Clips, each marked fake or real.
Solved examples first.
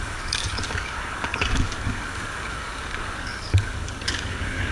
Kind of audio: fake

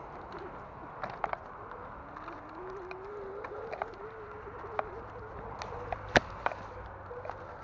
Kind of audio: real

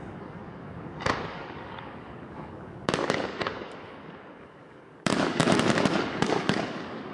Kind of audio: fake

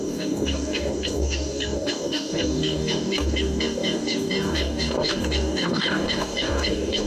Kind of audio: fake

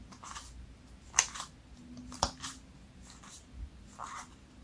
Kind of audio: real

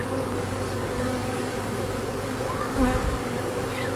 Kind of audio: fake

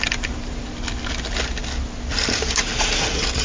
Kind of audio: real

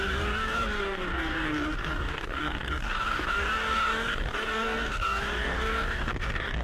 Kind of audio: fake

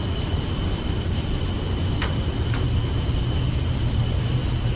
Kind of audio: real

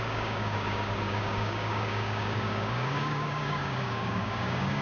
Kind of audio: fake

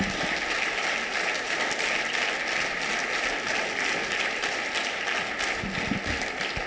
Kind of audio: real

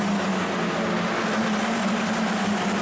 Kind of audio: real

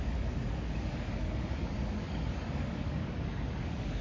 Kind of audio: fake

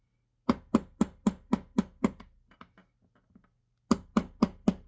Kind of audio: real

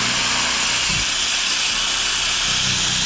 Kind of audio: real